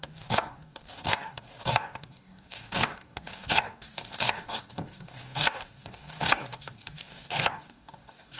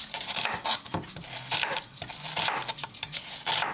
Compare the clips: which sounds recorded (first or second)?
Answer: second